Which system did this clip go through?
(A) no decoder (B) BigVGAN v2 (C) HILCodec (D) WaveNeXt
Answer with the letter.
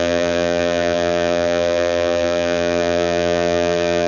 B